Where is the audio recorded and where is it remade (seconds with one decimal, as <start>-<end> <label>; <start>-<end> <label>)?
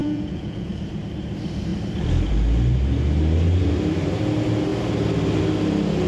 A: 0.0-0.7 remade; 0.7-6.1 recorded